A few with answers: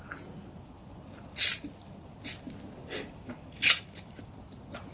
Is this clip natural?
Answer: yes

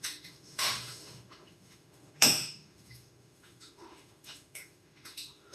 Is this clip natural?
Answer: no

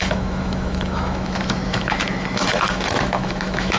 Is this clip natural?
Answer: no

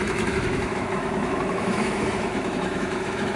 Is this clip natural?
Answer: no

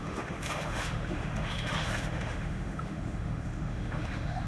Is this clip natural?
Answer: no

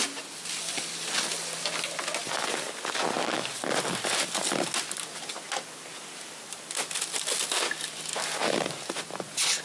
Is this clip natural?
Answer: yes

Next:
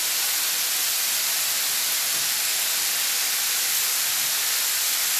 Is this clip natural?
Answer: yes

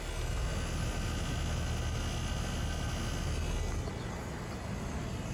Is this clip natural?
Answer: yes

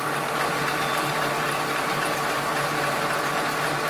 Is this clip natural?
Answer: yes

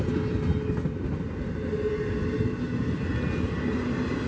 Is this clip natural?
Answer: yes